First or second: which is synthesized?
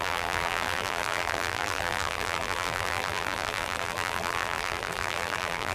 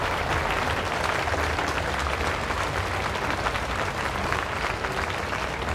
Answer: first